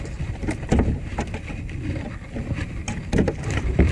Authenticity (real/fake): fake